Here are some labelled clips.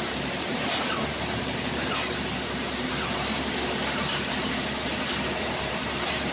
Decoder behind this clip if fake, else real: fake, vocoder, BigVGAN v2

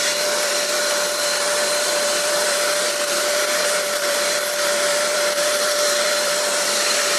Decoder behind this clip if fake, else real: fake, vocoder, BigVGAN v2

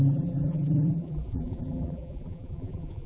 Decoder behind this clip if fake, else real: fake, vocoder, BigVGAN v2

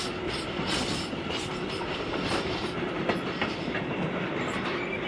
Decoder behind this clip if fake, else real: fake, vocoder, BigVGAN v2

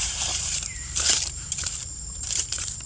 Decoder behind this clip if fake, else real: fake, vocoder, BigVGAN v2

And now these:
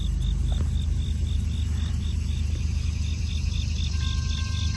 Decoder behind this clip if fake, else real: real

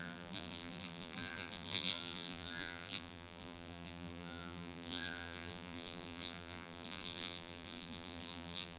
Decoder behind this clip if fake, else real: fake, vocoder, BigVGAN v2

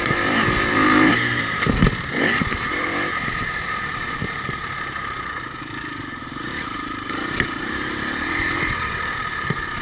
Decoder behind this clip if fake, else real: fake, vocoder, BigVGAN v2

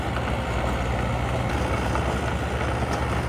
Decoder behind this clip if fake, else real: real